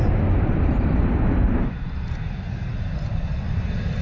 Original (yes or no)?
yes